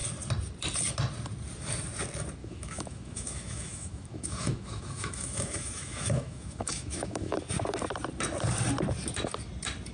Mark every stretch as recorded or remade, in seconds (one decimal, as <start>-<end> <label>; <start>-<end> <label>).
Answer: 0.0-2.4 recorded; 2.4-7.3 remade; 7.3-9.9 recorded